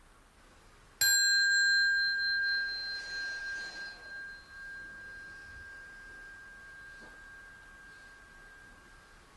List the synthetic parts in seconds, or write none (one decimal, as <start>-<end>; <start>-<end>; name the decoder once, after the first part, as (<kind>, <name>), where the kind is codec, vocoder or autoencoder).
none